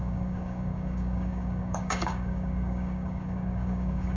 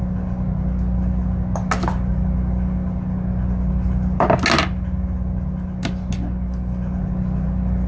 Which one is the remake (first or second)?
first